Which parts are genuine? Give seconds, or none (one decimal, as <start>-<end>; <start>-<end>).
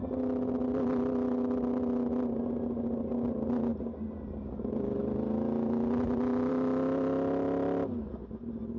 0.0-8.8